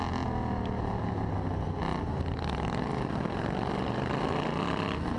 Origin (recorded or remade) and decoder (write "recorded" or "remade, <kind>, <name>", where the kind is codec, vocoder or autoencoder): recorded